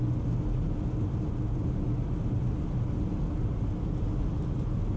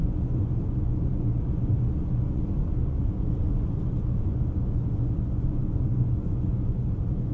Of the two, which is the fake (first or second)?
second